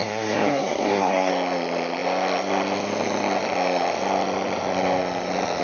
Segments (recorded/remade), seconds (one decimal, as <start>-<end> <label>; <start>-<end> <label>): 0.0-1.3 remade; 1.3-5.6 recorded